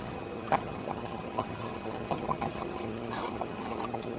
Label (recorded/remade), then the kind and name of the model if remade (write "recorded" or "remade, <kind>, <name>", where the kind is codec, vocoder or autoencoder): remade, vocoder, HiFi-GAN